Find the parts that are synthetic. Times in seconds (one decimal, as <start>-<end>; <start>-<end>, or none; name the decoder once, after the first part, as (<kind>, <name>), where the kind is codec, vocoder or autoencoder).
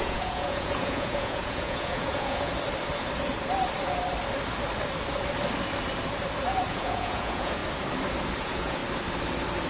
0.0-2.5 (vocoder, Vocos); 6.7-7.6; 8.4-8.8